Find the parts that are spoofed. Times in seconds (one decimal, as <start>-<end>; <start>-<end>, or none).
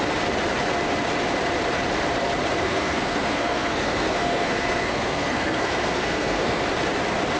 2.6-6.6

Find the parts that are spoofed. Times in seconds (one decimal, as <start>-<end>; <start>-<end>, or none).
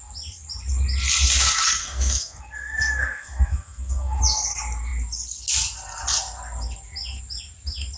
1.8-4.2